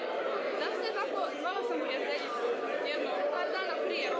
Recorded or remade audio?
recorded